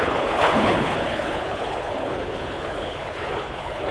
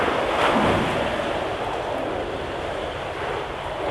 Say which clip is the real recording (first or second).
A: second